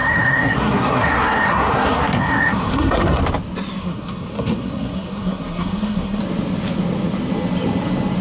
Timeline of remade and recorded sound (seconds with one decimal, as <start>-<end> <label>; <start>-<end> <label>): 0.0-3.2 remade; 3.2-3.8 recorded; 3.8-6.2 remade; 6.2-8.2 recorded